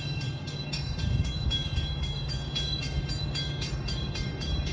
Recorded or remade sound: remade